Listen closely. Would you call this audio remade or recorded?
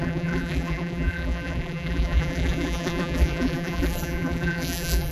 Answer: remade